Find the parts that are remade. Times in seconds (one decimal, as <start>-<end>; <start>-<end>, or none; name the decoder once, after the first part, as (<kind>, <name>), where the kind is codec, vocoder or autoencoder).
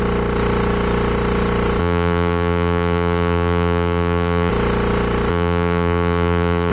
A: 1.8-4.5 (vocoder, BigVGAN v2); 5.3-6.7